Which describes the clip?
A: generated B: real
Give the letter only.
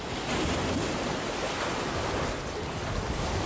B